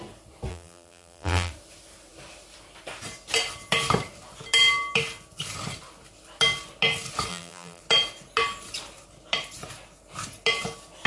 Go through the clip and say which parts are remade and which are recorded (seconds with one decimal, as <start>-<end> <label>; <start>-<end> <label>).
0.0-0.5 recorded; 0.5-1.5 remade; 1.5-7.3 recorded; 7.3-7.8 remade; 7.8-11.1 recorded